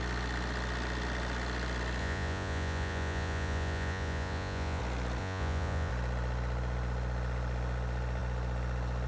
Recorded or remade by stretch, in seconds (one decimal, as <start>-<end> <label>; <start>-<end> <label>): 0.0-2.0 recorded; 2.0-4.8 remade; 4.8-5.2 recorded; 5.2-5.9 remade; 5.9-9.1 recorded